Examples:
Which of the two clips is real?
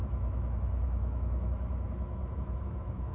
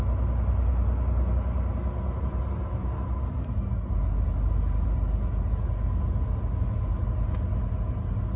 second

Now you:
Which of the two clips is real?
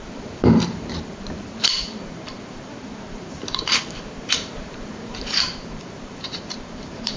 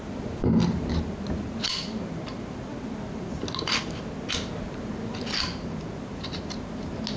second